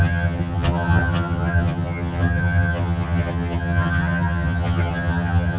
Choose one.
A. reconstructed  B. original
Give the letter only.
A